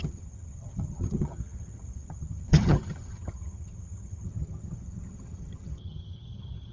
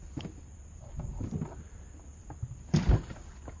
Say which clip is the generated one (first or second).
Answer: first